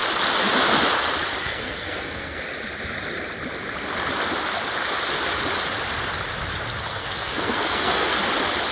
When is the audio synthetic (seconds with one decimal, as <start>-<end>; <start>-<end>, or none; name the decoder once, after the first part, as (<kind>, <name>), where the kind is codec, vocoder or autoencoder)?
1.4-2.4 (codec, SNAC); 6.9-8.2